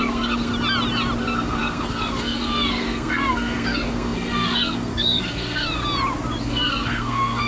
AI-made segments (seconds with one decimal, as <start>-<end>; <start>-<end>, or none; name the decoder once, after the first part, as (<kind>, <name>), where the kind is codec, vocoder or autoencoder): 0.0-0.5 (codec, SNAC); 1.2-5.8; 6.4-7.5